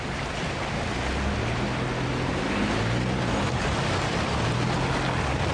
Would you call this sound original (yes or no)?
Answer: yes